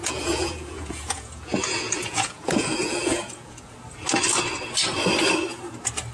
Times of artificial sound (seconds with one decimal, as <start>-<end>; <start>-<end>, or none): 0.0-3.7

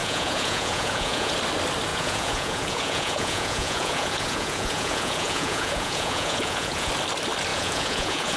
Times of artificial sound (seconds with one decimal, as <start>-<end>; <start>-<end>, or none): 0.0-1.3; 1.9-6.9; 7.5-8.4

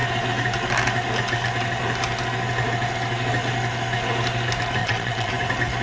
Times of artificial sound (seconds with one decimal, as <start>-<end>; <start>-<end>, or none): 4.8-5.3